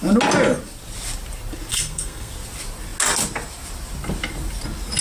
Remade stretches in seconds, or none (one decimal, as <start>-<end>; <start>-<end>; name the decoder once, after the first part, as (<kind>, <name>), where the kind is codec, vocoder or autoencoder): 1.7-2.3 (codec, SNAC)